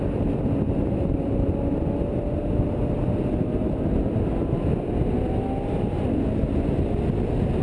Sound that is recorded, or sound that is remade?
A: recorded